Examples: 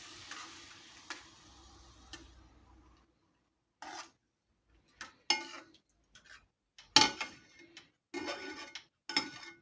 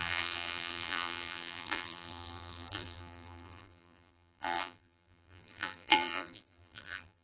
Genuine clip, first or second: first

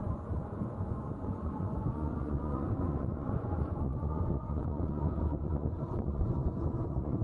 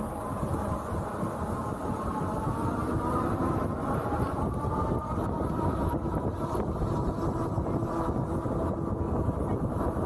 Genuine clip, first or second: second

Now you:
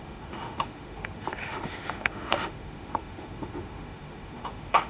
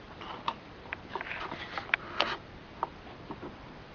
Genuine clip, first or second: second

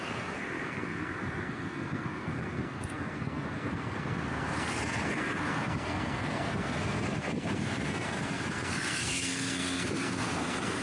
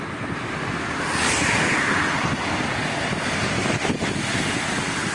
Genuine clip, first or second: second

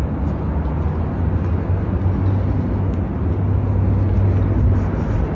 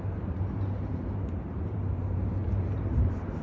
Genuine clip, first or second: first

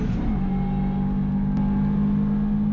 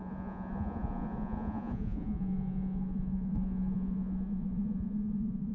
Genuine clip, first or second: first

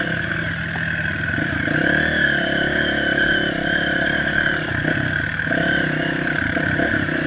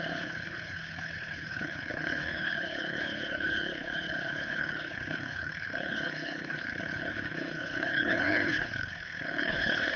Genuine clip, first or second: first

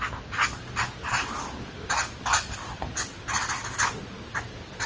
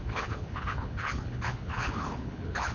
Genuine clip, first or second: first